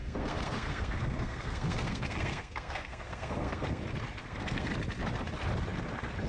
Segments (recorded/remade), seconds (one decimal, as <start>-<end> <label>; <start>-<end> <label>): 0.0-3.8 remade; 3.8-4.2 recorded; 4.2-4.7 remade; 4.7-6.3 recorded